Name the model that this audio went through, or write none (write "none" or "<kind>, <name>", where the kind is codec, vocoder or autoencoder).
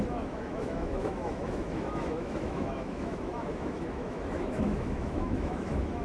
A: autoencoder, DAC-VAE